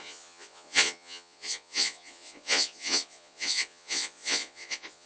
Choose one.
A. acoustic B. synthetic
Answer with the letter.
B